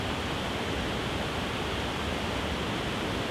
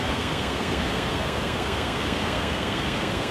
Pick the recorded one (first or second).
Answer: first